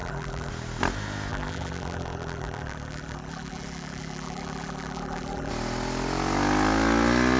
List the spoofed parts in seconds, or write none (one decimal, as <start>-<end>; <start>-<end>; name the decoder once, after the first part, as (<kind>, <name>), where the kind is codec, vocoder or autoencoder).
0.0-0.5 (vocoder, BigVGAN v2); 1.3-5.5